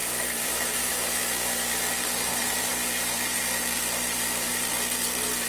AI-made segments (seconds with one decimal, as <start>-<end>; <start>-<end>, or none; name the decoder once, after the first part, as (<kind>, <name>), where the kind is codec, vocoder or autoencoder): 0.0-5.5 (vocoder, BigVGAN v2)